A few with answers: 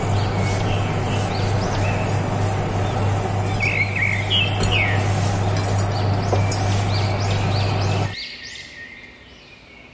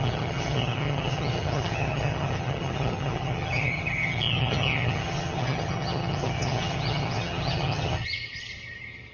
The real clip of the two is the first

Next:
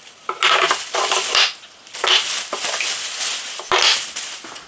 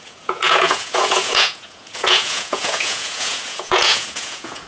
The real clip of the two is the first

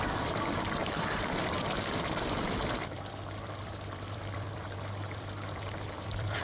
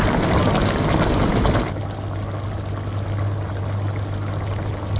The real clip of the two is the second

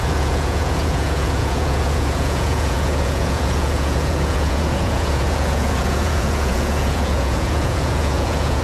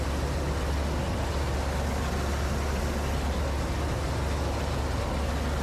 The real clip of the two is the second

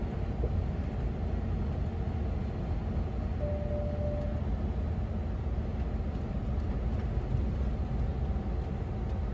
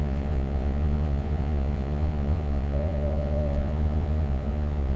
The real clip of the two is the first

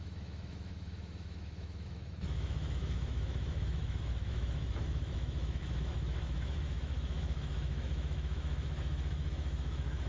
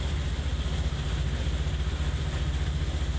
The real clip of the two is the second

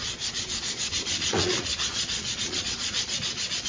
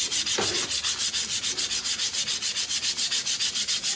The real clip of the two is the second